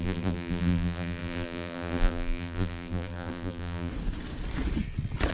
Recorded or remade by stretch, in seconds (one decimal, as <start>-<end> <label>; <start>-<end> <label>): 0.0-3.9 remade; 3.9-5.3 recorded